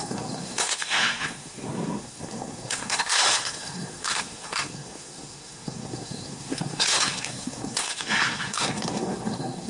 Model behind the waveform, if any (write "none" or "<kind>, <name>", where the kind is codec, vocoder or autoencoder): codec, SNAC